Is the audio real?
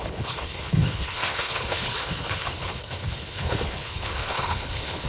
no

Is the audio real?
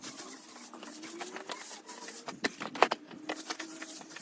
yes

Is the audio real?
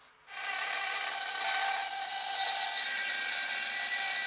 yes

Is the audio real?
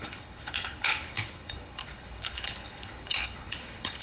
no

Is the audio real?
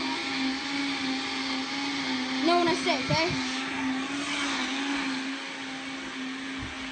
yes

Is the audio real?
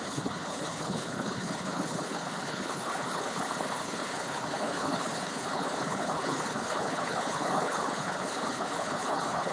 no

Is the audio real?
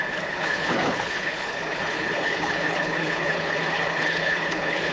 no